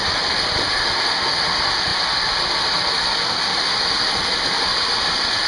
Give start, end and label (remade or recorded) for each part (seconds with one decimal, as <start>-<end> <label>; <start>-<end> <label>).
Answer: 0.0-5.5 recorded